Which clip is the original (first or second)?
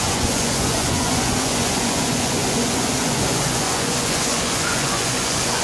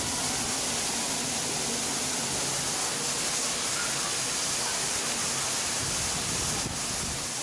second